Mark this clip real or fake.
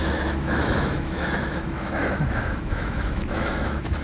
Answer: fake